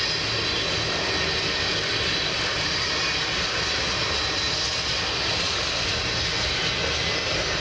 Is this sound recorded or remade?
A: recorded